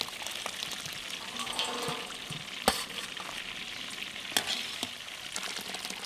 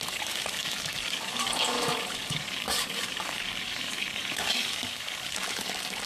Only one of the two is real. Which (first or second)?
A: first